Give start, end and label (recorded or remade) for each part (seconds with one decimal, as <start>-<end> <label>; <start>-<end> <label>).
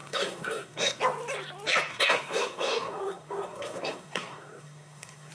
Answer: 0.0-1.0 remade; 1.0-1.9 recorded; 1.9-5.3 remade